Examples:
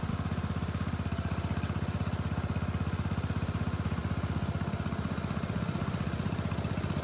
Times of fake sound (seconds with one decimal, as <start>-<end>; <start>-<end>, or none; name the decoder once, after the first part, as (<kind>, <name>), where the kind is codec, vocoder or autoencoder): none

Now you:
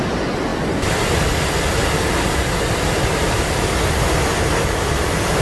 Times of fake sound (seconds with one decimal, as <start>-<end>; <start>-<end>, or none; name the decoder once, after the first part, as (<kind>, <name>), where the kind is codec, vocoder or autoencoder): none

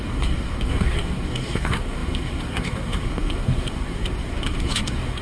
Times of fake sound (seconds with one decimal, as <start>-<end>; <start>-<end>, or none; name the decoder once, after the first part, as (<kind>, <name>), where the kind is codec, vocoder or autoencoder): 0.0-5.2 (codec, SNAC)

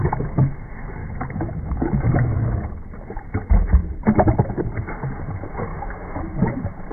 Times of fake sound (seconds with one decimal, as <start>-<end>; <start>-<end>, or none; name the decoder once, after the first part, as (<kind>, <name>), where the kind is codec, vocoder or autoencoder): 1.0-2.7 (autoencoder, DAC-VAE); 5.7-6.2

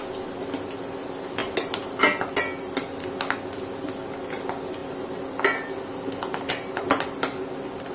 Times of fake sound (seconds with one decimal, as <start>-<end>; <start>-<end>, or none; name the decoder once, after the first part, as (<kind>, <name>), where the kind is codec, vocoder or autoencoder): 1.4-2.0 (vocoder, BigVGAN v2); 4.8-6.3

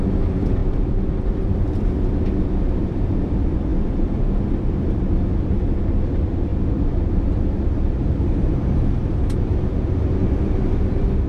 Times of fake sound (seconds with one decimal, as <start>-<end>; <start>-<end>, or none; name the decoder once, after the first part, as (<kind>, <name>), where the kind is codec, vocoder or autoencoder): 0.0-6.5 (vocoder, BigVGAN v2); 7.1-11.3

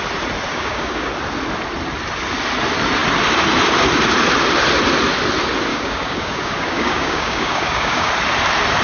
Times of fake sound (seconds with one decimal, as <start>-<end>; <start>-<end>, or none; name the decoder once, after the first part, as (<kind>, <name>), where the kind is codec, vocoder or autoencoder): 0.5-1.1 (codec, DAC); 5.7-8.1

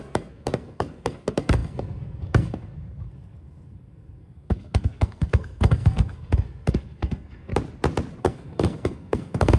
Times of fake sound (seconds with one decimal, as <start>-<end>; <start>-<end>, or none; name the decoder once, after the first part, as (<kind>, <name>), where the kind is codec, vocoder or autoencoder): 0.0-7.5 (codec, SNAC); 8.2-9.6